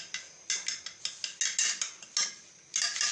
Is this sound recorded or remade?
recorded